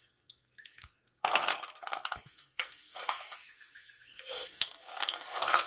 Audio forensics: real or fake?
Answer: fake